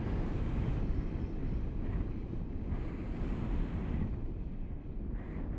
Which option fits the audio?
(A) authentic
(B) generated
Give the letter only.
A